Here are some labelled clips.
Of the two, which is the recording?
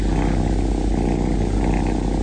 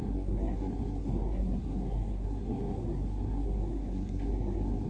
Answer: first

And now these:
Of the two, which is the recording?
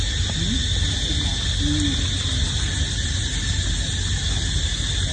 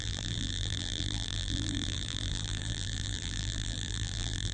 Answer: first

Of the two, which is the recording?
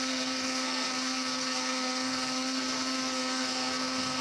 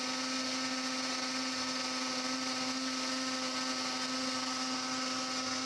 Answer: second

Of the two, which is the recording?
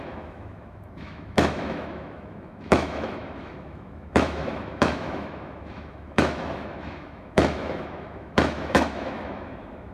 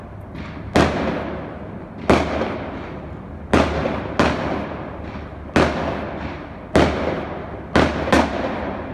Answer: second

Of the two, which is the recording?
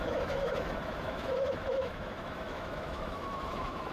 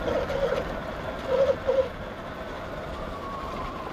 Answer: second